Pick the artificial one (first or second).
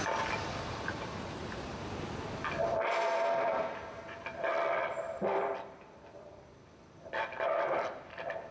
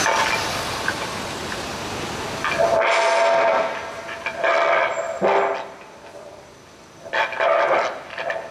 first